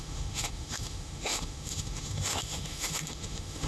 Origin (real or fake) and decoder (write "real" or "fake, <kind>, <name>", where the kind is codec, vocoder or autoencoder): fake, autoencoder, DAC-VAE